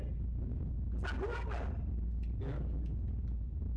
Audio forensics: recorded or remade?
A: recorded